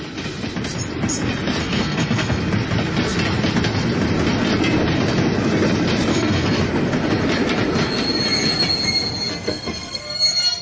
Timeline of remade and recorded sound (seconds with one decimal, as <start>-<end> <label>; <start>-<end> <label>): 0.0-1.6 recorded; 1.6-2.4 remade; 2.4-6.1 recorded; 6.1-6.6 remade; 6.6-9.3 recorded; 9.3-10.0 remade; 10.0-10.6 recorded

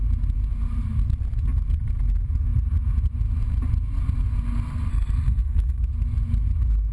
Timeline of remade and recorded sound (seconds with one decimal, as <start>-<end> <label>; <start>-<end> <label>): 0.0-4.9 recorded; 4.9-5.8 remade; 5.8-6.9 recorded

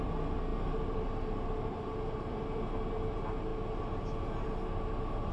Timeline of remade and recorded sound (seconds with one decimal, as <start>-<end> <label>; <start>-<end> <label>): 0.0-5.3 recorded

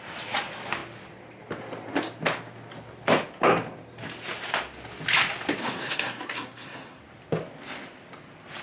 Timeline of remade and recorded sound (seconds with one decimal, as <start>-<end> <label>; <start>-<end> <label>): 0.0-5.6 recorded; 5.6-7.0 remade; 7.0-8.6 recorded

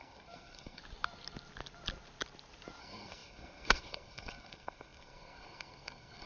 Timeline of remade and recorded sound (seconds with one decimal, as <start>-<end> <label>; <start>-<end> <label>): 0.0-0.8 remade; 0.8-2.8 recorded; 2.8-6.3 remade

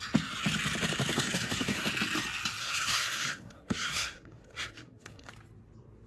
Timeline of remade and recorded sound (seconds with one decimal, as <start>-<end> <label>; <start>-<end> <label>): 0.0-1.1 recorded; 1.1-1.9 remade; 1.9-2.6 recorded; 2.6-5.3 remade; 5.3-6.1 recorded

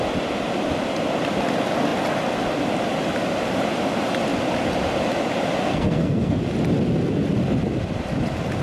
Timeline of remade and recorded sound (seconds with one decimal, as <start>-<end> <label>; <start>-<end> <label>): 0.0-5.7 recorded; 5.7-6.4 remade; 6.4-8.6 recorded